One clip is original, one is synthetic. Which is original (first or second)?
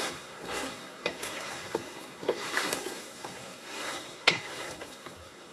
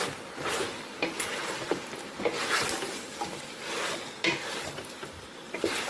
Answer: second